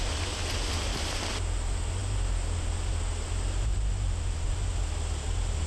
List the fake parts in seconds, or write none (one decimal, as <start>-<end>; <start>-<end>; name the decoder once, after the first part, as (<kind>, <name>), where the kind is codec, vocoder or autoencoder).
none